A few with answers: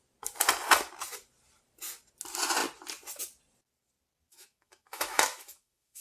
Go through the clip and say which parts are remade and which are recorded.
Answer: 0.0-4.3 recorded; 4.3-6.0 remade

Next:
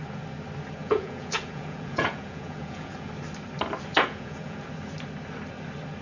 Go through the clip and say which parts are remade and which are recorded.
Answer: 0.0-0.8 recorded; 0.8-3.1 remade; 3.1-3.9 recorded; 3.9-4.7 remade; 4.7-6.0 recorded

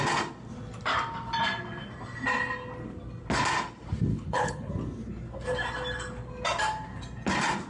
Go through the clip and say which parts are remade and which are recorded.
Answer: 0.0-4.1 recorded; 4.1-4.7 remade; 4.7-7.7 recorded

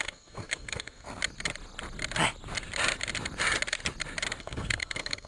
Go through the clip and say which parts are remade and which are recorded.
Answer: 0.0-1.2 remade; 1.2-4.4 recorded; 4.4-5.3 remade

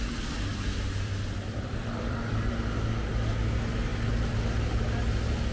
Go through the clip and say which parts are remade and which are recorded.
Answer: 0.0-0.5 recorded; 0.5-2.5 remade; 2.5-3.9 recorded; 3.9-4.8 remade; 4.8-5.5 recorded